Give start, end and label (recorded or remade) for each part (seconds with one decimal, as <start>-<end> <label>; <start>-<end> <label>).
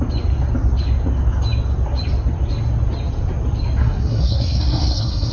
0.0-3.8 recorded; 3.8-5.3 remade